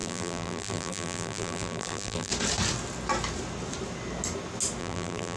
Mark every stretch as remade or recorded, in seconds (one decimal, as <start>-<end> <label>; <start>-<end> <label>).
0.0-2.3 remade; 2.3-4.8 recorded; 4.8-5.4 remade

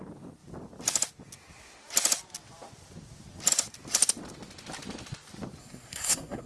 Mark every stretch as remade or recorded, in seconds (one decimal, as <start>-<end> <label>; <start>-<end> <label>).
0.0-5.6 recorded; 5.6-6.5 remade

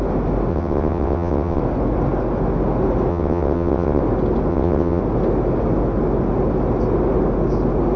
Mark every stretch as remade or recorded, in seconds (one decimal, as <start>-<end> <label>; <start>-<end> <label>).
0.0-0.5 recorded; 0.5-1.6 remade; 1.6-3.1 recorded; 3.1-4.0 remade; 4.0-4.5 recorded; 4.5-5.0 remade; 5.0-8.0 recorded

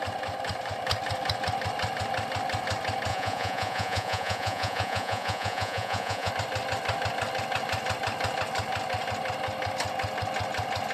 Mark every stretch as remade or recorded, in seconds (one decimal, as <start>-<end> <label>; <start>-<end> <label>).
0.0-3.1 recorded; 3.1-6.3 remade; 6.3-10.9 recorded